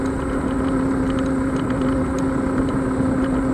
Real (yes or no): yes